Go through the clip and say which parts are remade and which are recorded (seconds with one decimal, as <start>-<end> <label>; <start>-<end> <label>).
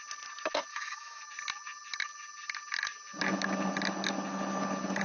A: 0.0-0.7 recorded; 0.7-1.2 remade; 1.2-5.0 recorded